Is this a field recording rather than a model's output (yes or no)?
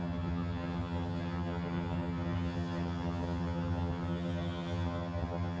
no